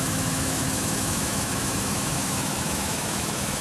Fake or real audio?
fake